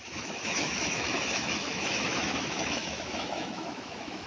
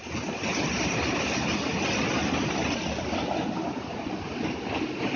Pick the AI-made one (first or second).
first